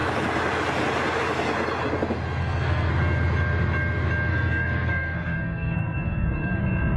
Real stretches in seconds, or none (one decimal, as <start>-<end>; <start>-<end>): 0.0-2.4; 2.9-4.3; 6.6-7.0